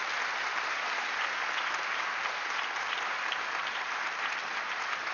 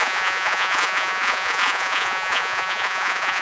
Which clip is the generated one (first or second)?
second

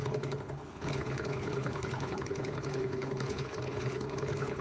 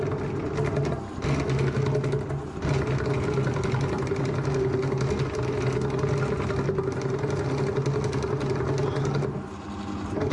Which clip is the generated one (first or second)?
first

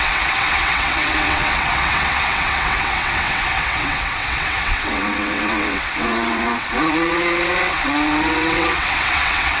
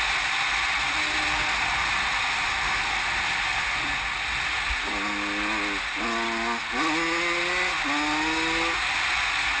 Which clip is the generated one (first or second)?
first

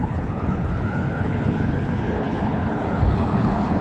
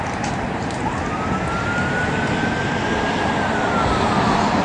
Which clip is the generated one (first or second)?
first